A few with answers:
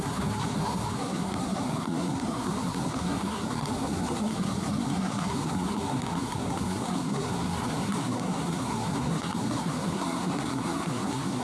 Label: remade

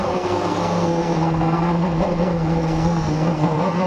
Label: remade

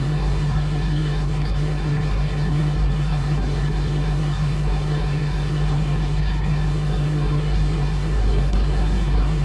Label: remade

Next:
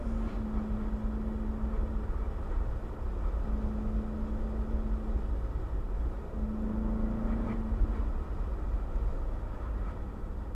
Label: recorded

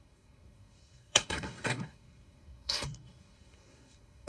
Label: remade